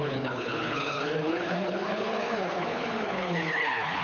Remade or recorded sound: remade